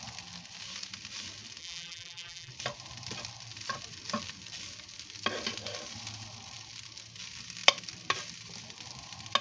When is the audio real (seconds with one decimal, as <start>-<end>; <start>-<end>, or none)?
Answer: 0.0-1.6; 2.5-9.4